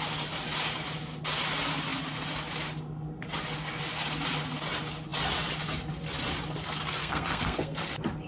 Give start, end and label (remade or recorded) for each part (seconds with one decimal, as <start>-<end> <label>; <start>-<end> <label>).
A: 0.0-7.0 recorded; 7.0-7.8 remade; 7.8-8.3 recorded